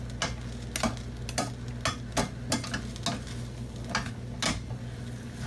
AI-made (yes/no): no